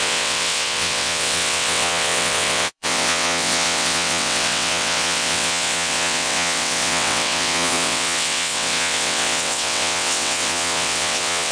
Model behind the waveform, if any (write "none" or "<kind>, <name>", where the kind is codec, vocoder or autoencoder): vocoder, WaveNeXt